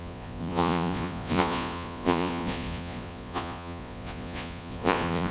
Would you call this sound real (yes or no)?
no